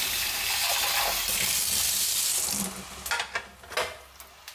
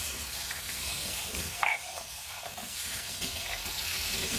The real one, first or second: first